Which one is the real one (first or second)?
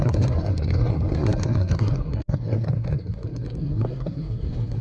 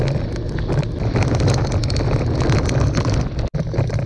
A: second